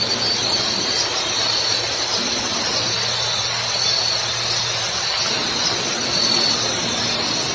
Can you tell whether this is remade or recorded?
recorded